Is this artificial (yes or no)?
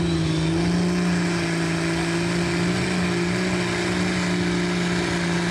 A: no